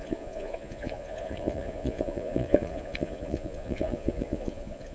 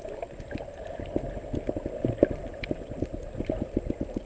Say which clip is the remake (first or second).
first